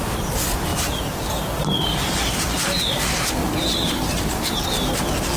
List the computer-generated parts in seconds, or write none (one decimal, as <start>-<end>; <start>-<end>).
0.7-1.4; 3.4-4.6